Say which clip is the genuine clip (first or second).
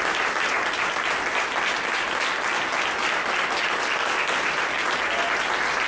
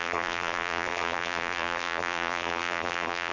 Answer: first